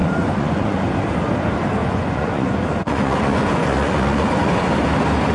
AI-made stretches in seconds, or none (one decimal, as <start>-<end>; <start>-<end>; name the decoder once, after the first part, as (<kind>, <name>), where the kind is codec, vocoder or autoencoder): 0.0-0.8 (vocoder, Vocos); 1.8-4.5